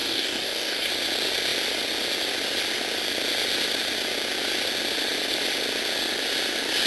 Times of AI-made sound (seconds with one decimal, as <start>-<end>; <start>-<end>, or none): 0.0-0.9